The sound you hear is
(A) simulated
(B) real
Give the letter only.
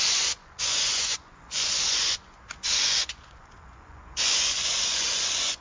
A